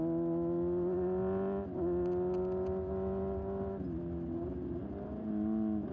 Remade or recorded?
recorded